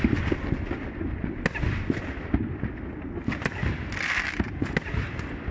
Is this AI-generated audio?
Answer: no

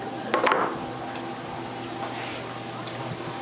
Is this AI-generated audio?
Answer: no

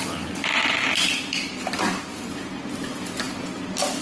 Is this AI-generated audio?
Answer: no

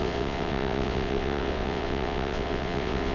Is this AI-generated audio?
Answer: yes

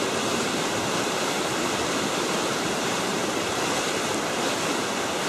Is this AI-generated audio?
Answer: yes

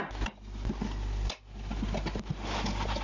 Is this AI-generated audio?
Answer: no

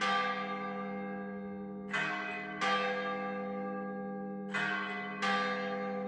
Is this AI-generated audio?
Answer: no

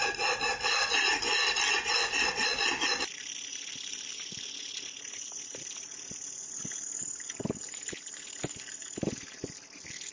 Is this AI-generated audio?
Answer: no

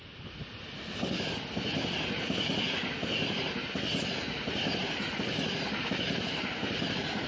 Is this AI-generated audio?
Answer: no